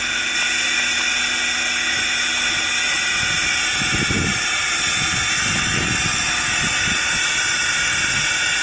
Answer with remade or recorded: recorded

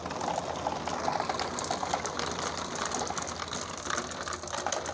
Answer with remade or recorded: recorded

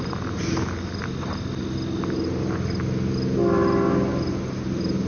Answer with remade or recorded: recorded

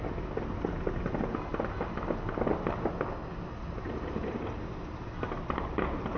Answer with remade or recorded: recorded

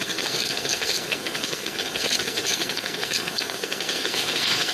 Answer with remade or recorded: remade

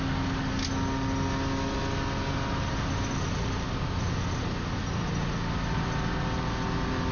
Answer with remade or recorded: recorded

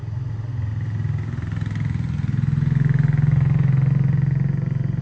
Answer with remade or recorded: recorded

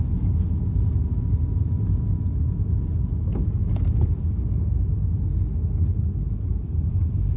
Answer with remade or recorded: recorded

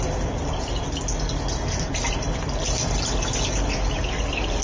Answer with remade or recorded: recorded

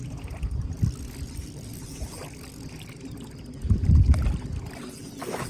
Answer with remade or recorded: recorded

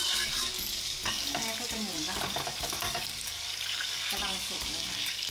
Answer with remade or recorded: remade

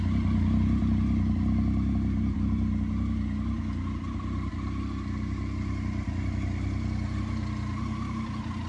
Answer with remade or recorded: recorded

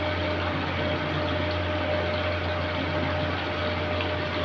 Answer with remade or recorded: recorded